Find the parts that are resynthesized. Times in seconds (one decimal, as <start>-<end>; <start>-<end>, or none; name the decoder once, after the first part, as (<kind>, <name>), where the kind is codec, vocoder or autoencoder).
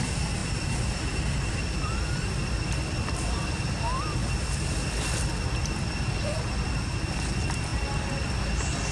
none